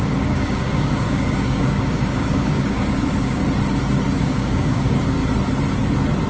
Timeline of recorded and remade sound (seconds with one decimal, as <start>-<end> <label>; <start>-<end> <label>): 0.0-3.4 remade; 3.4-4.2 recorded; 4.2-5.2 remade; 5.2-6.3 recorded